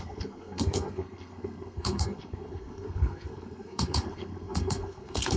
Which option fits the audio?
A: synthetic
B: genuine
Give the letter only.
A